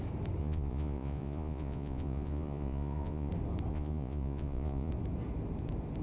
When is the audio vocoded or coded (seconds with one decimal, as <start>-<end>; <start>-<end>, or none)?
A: 0.4-3.3; 3.7-4.9